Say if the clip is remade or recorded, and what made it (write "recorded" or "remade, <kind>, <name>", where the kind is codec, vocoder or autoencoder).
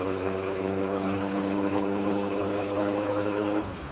remade, codec, HILCodec